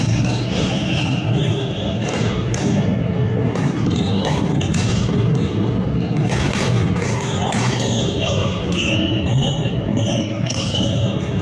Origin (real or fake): fake